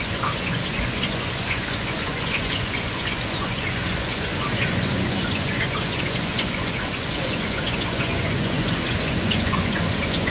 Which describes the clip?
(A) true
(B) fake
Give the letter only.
B